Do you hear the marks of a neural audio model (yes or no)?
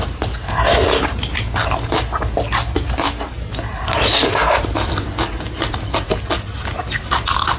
no